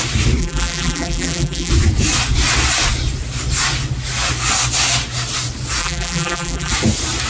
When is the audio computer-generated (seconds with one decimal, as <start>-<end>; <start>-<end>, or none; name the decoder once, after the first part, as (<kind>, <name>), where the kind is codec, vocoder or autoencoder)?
0.4-1.7 (vocoder, BigVGAN v2); 5.8-6.7